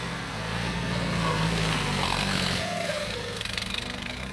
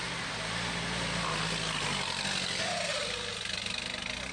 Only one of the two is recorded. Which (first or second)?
second